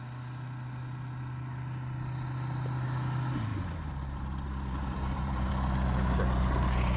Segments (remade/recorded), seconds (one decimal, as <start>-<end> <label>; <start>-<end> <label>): 0.0-3.5 recorded; 3.5-5.5 remade; 5.5-7.0 recorded

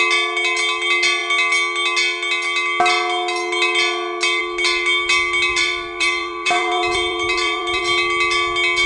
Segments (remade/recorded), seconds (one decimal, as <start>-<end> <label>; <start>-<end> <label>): 0.0-5.5 recorded; 5.5-7.8 remade; 7.8-8.9 recorded